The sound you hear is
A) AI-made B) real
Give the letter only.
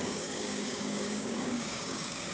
A